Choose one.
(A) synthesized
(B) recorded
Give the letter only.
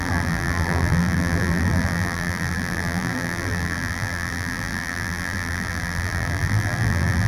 A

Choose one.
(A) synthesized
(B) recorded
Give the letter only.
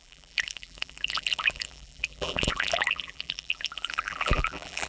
A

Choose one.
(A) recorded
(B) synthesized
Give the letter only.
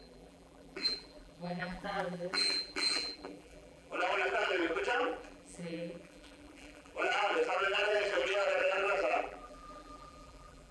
B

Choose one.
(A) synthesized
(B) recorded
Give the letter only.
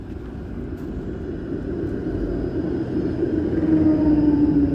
B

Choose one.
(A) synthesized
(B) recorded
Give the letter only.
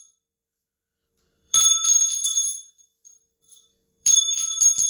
A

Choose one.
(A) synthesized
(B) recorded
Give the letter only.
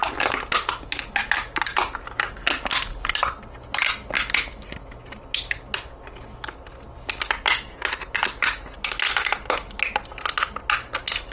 B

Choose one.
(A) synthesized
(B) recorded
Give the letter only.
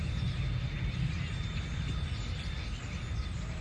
B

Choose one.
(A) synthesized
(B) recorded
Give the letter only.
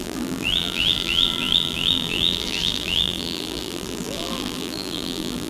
A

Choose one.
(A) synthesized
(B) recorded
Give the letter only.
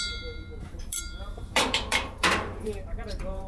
A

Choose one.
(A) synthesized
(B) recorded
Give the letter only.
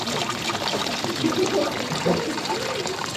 A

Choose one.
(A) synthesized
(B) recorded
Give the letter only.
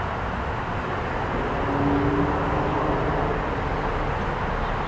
B